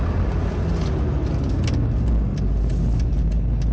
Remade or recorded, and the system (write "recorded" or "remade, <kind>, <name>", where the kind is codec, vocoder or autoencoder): recorded